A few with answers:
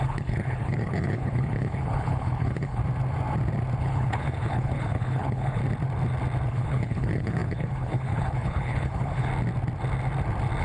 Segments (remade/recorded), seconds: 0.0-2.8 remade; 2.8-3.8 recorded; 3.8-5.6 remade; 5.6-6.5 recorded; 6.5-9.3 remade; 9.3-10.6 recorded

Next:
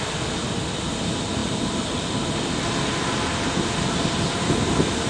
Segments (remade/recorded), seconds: 0.0-5.1 recorded

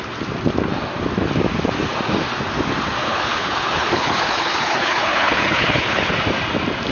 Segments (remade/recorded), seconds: 0.0-3.0 recorded; 3.0-6.1 remade; 6.1-6.9 recorded

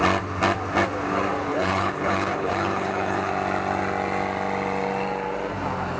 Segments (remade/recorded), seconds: 0.0-1.5 recorded; 1.5-3.3 remade; 3.3-6.0 recorded

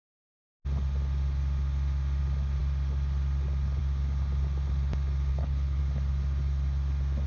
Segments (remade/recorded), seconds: 0.0-5.3 recorded; 5.3-5.8 remade; 5.8-7.3 recorded